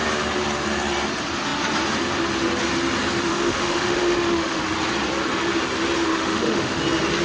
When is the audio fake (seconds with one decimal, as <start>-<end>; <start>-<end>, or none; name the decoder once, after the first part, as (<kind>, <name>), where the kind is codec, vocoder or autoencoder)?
3.3-4.6 (autoencoder, DAC-VAE); 6.1-6.8